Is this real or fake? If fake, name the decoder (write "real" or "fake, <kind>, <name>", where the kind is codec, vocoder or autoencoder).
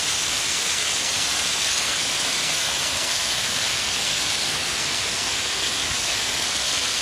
fake, codec, SNAC